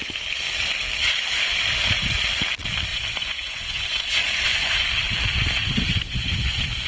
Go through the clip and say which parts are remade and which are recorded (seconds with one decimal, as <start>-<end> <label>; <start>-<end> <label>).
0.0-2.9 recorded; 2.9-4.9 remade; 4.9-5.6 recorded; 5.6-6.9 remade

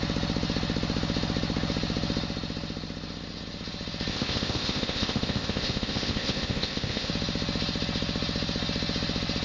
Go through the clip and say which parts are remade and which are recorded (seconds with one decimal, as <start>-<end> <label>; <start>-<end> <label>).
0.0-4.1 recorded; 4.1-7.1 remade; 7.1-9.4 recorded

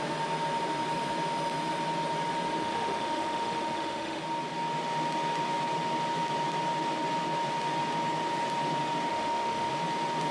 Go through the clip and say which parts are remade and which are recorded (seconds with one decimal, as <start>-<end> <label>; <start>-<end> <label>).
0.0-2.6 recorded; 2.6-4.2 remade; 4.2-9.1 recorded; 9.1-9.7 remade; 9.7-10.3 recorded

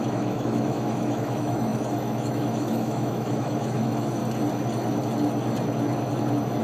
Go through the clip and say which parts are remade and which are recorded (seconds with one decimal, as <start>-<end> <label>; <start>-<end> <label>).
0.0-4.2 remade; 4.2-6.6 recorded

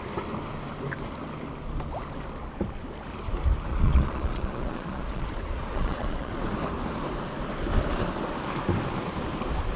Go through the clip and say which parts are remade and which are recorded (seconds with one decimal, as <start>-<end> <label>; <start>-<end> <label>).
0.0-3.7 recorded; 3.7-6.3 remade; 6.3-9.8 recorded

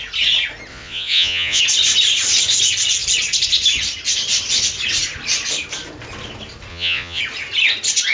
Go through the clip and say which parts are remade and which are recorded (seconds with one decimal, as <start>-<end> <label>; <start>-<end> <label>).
0.0-0.7 recorded; 0.7-1.6 remade; 1.6-6.7 recorded; 6.7-7.2 remade; 7.2-8.1 recorded

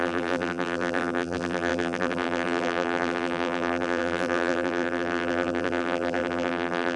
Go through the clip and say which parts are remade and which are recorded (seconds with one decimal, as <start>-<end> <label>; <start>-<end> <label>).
0.0-7.0 remade

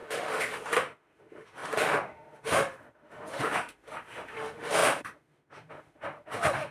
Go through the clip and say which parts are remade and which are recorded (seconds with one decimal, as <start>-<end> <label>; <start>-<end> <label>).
0.0-6.7 remade